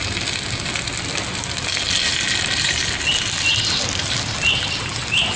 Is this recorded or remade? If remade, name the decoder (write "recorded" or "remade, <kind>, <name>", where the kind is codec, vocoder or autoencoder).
recorded